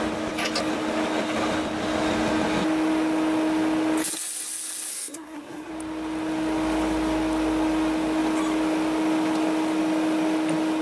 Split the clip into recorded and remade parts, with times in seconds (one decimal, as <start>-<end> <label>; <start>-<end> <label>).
0.0-4.9 recorded; 4.9-5.7 remade; 5.7-10.8 recorded